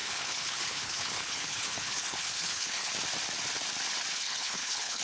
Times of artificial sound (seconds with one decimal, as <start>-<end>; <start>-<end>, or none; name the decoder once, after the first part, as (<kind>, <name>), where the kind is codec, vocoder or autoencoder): 0.0-2.9 (codec, HILCodec); 4.1-5.0